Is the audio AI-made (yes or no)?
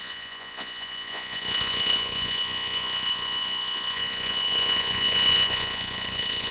yes